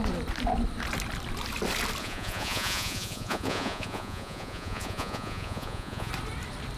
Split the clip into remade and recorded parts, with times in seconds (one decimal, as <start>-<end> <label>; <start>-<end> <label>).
0.0-2.0 recorded; 2.0-6.1 remade; 6.1-6.8 recorded